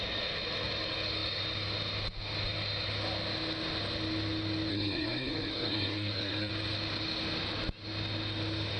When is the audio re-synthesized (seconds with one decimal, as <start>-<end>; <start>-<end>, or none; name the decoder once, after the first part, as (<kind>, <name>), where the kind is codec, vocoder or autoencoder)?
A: 4.7-6.5 (codec, SNAC)